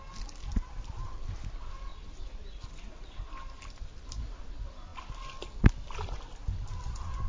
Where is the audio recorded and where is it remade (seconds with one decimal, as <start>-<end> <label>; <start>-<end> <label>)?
0.0-7.3 recorded